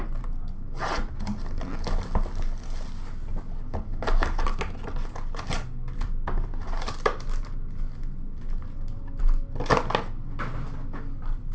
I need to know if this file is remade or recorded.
recorded